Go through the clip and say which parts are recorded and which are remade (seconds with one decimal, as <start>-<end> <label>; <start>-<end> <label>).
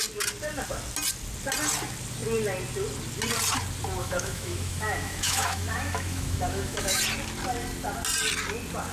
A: 0.0-4.0 recorded; 4.0-7.0 remade; 7.0-8.9 recorded